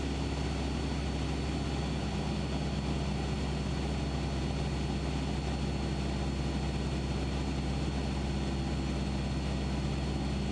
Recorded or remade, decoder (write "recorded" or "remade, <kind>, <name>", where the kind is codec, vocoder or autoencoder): recorded